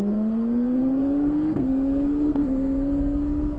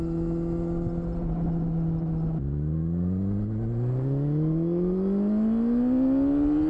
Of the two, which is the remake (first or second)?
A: first